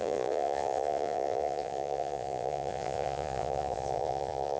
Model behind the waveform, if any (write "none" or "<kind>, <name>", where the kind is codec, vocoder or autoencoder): vocoder, Vocos